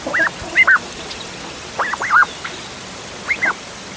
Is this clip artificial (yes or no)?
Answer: no